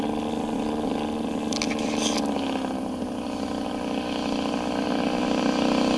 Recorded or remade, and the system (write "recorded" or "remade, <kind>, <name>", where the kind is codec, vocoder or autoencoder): recorded